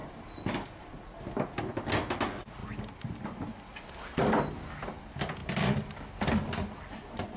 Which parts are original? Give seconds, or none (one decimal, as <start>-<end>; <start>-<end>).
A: 0.0-2.6; 5.0-5.4